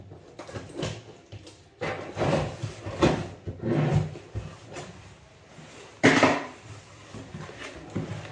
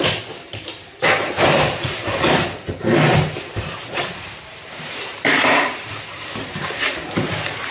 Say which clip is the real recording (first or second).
first